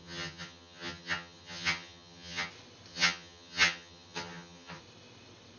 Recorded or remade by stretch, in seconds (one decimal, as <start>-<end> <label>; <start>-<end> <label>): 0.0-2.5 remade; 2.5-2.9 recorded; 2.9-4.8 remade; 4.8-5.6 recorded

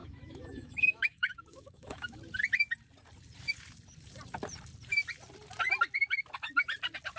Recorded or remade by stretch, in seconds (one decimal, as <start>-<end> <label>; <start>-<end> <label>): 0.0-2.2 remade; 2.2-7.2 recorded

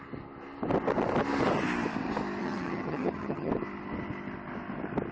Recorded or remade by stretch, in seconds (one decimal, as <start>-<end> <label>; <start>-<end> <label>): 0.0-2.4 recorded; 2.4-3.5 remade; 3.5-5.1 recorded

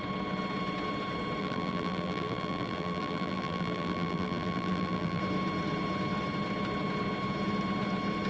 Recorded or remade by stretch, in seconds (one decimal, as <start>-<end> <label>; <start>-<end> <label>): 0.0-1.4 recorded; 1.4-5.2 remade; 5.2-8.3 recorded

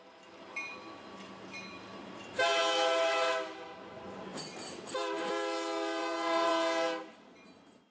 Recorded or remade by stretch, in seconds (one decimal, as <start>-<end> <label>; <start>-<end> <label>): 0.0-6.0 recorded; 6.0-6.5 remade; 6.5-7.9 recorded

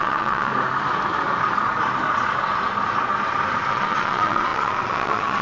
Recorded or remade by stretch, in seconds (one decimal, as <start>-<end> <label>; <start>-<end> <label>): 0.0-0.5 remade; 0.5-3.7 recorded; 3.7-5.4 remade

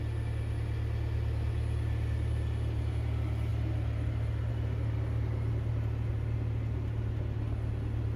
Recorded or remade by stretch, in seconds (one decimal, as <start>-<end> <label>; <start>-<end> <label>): 0.0-3.5 recorded; 3.5-4.5 remade; 4.5-8.2 recorded

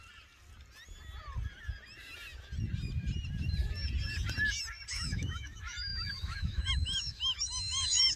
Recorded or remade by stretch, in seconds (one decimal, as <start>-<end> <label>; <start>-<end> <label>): 0.0-4.9 recorded; 4.9-8.2 remade